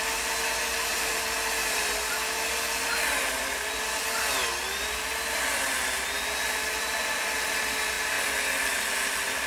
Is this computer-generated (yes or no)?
no